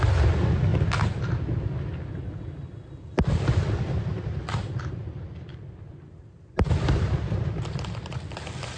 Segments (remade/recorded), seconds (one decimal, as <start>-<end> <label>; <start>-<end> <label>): 0.0-0.7 remade; 0.7-2.1 recorded; 2.1-8.8 remade